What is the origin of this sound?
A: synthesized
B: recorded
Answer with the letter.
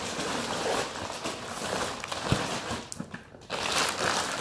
B